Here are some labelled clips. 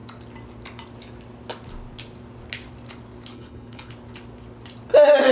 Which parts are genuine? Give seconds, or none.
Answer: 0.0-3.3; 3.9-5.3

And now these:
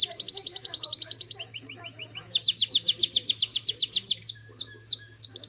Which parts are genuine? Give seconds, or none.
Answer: none